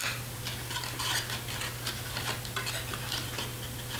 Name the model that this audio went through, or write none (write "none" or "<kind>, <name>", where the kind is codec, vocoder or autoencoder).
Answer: none